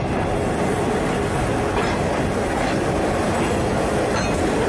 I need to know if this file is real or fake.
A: real